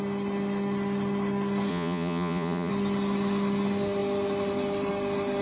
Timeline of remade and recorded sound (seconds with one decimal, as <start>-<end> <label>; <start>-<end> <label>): 0.0-1.7 recorded; 1.7-2.7 remade; 2.7-5.4 recorded